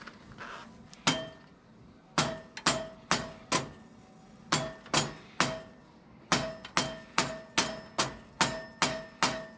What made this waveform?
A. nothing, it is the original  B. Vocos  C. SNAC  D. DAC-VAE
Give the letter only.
A